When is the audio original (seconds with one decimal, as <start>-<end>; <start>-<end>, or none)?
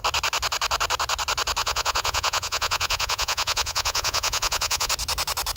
0.0-1.6; 4.9-5.6